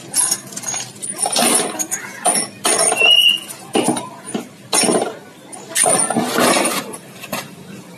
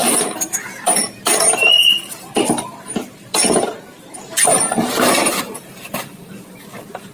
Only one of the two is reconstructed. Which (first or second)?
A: second